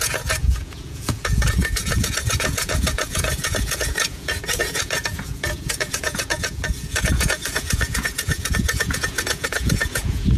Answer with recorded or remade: remade